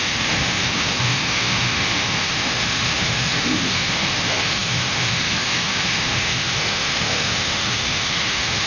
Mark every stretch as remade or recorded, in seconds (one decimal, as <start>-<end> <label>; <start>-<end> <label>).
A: 0.0-8.7 remade

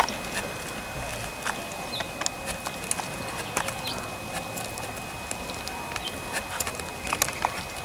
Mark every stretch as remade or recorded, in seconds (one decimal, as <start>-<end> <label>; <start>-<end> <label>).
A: 0.0-7.8 recorded

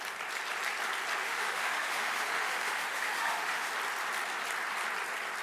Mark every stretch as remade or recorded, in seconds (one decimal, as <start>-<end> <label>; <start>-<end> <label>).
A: 0.0-1.2 recorded; 1.2-3.7 remade; 3.7-5.4 recorded

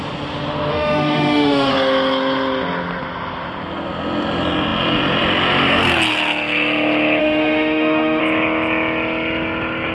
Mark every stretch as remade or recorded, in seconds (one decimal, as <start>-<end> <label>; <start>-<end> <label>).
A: 0.0-0.7 recorded; 0.7-1.7 remade; 1.7-7.2 recorded; 7.2-8.2 remade; 8.2-9.9 recorded

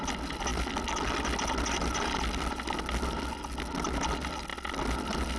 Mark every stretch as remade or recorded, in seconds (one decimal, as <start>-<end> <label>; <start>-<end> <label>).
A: 0.0-5.4 recorded

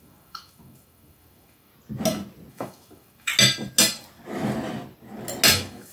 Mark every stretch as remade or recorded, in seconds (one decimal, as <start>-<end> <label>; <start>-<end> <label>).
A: 0.0-1.7 remade; 1.7-2.5 recorded; 2.5-3.3 remade; 3.3-5.5 recorded; 5.5-5.9 remade

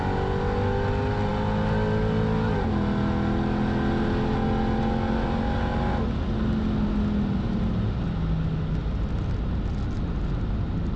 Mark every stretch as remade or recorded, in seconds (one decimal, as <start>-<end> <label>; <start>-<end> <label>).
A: 0.0-11.0 recorded